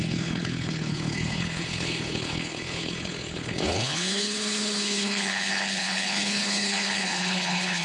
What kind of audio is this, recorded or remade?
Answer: remade